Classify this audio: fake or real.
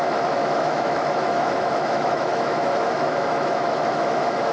fake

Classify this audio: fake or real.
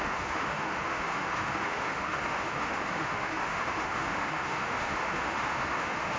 fake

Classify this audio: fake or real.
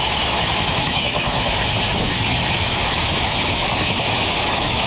fake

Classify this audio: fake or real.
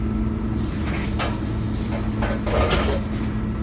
real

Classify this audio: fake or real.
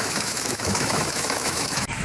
fake